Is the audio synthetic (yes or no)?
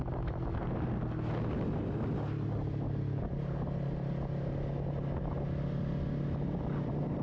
no